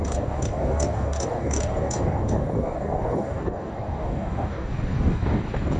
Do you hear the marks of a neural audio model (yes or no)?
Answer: yes